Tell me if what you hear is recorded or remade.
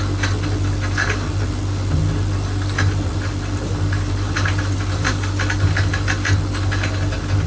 recorded